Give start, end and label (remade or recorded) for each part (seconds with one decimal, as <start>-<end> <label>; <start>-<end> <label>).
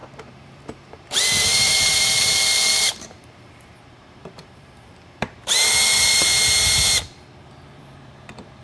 0.0-6.3 remade; 6.3-7.8 recorded; 7.8-8.6 remade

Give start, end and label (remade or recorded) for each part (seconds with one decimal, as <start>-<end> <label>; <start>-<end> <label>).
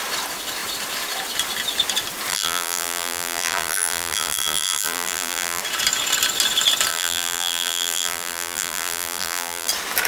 0.0-2.3 recorded; 2.3-5.6 remade; 5.6-6.9 recorded; 6.9-9.7 remade; 9.7-10.1 recorded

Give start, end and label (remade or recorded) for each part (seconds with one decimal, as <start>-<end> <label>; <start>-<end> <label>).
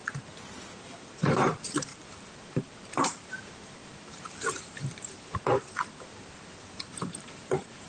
0.0-0.8 recorded; 0.8-7.9 remade